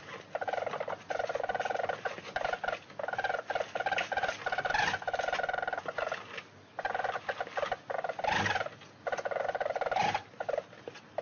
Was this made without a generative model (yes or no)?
yes